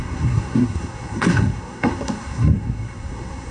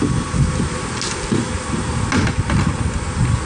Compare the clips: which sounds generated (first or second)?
first